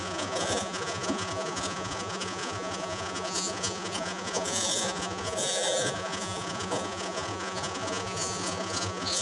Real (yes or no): no